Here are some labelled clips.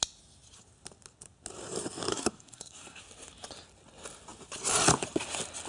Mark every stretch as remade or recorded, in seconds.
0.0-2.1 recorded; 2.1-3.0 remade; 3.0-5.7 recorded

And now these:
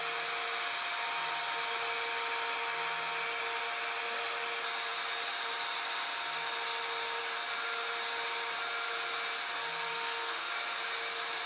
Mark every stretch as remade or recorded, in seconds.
0.0-9.9 recorded; 9.9-10.5 remade; 10.5-11.5 recorded

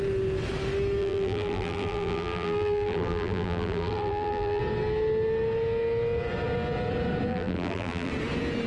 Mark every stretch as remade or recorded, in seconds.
0.0-1.0 recorded; 1.0-4.6 remade; 4.6-7.3 recorded; 7.3-8.1 remade; 8.1-8.7 recorded

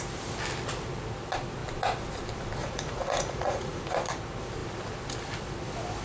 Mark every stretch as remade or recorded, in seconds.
0.0-2.6 recorded; 2.6-3.8 remade; 3.8-6.0 recorded

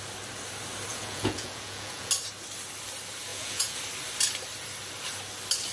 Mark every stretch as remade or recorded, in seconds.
0.0-0.9 recorded; 0.9-2.1 remade; 2.1-3.3 recorded; 3.3-3.8 remade; 3.8-5.7 recorded

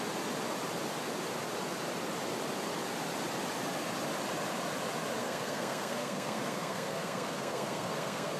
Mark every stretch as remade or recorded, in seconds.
0.0-5.2 recorded; 5.2-8.4 remade

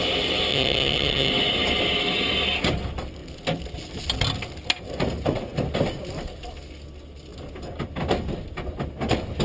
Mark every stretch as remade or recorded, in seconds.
0.0-0.5 recorded; 0.5-1.3 remade; 1.3-9.4 recorded